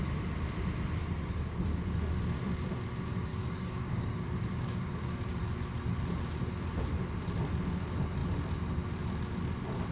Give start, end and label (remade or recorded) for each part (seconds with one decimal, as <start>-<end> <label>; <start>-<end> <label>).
0.0-3.3 recorded; 3.3-5.4 remade; 5.4-9.9 recorded

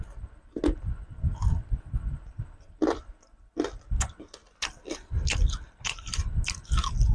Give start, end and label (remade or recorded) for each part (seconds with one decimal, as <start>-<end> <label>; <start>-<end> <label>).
0.0-4.4 recorded; 4.4-6.4 remade; 6.4-7.1 recorded